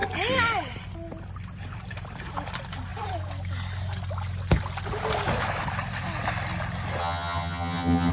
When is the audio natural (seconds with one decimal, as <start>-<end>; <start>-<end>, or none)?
0.0-7.0

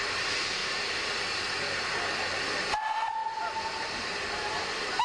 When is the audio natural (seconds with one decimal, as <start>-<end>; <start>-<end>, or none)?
0.0-5.0

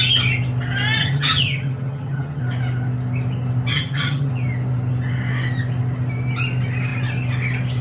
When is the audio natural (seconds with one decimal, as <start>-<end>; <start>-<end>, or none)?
0.0-1.0; 2.4-3.7; 4.3-7.8

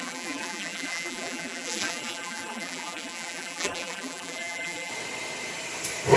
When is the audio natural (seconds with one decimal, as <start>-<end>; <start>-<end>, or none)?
4.9-6.2

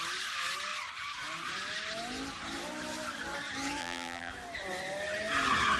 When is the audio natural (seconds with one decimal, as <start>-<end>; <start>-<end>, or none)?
0.0-3.8; 4.3-5.8

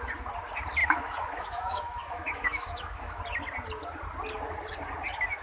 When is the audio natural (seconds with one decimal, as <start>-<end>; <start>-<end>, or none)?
0.0-0.8; 3.2-5.4